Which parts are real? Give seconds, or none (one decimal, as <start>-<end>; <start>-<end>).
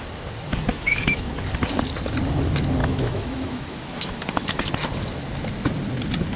0.0-0.7; 1.3-2.8; 4.7-6.4